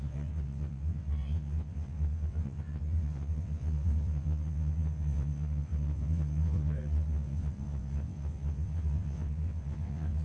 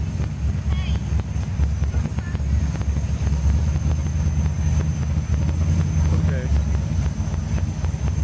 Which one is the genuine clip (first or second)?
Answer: second